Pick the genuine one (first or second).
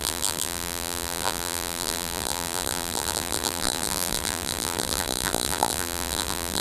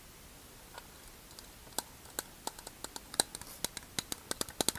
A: second